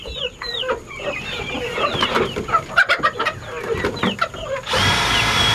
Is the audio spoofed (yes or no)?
yes